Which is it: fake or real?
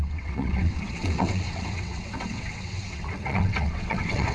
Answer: fake